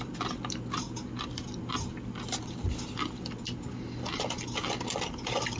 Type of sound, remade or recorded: recorded